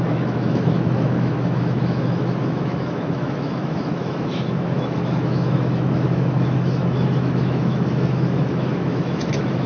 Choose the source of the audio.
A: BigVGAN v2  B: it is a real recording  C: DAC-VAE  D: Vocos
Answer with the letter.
C